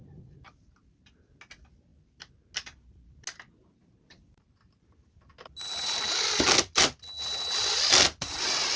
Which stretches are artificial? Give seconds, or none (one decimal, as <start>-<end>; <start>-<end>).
none

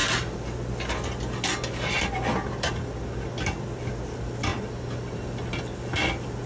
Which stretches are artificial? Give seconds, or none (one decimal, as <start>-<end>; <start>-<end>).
none

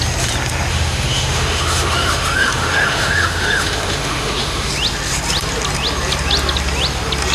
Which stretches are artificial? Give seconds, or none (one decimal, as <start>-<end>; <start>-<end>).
0.7-4.7

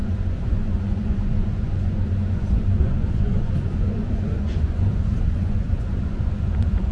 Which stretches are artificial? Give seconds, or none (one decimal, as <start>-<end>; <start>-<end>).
0.0-6.9

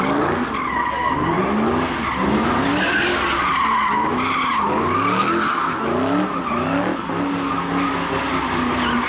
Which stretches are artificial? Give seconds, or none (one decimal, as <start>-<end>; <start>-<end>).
none

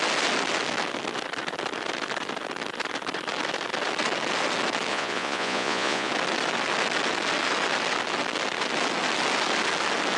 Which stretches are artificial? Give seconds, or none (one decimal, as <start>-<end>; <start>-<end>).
4.9-6.1